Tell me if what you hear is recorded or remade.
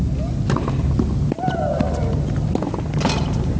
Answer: recorded